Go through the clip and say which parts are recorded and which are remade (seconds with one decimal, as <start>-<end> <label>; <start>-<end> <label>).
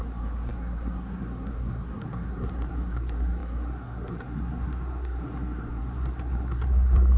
0.0-7.2 remade